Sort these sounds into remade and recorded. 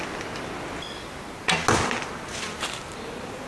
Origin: recorded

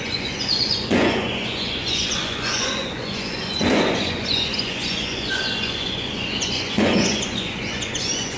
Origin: remade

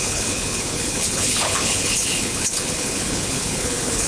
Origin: remade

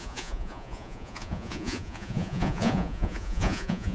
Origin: remade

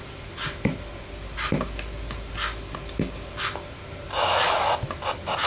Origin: recorded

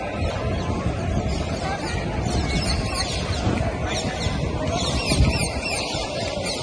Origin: recorded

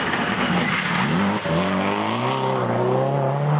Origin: recorded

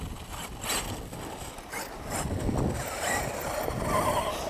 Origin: recorded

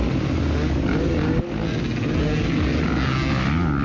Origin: recorded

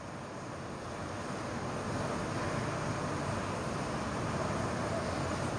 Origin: recorded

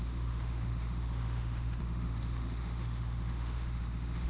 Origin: remade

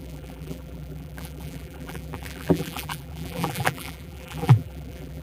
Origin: remade